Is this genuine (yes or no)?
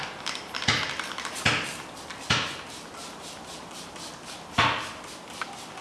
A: yes